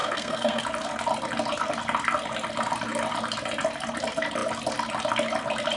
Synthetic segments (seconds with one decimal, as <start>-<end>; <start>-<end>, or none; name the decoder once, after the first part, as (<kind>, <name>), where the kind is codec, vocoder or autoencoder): 0.0-0.6 (codec, SNAC)